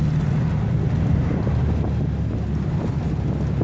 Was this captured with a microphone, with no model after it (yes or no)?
yes